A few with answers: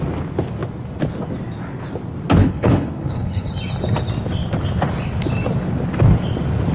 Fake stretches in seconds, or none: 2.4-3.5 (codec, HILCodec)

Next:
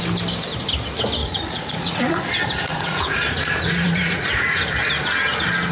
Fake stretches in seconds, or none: 1.2-4.6 (vocoder, Vocos)

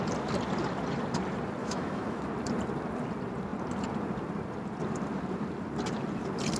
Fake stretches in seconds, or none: 1.6-2.2 (autoencoder, DAC-VAE)

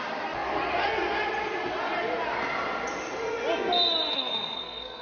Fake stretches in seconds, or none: 4.1-5.0 (codec, SNAC)

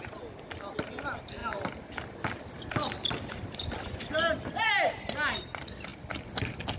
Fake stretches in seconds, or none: none

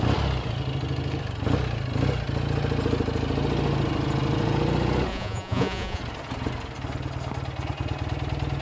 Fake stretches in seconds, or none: 5.1-6.0 (vocoder, Vocos)

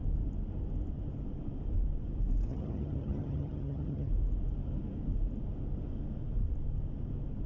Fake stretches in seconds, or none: 2.5-4.1 (vocoder, HiFi-GAN)

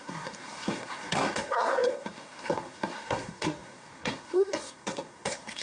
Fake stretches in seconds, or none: 0.0-5.6 (codec, SNAC)